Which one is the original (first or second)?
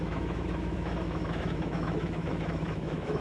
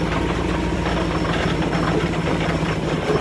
second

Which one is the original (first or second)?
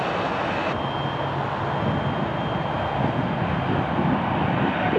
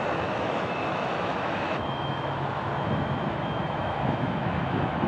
first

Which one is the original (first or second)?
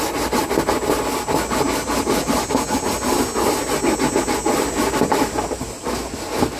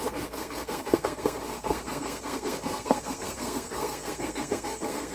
first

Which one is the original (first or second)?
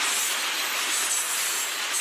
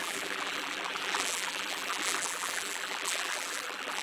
first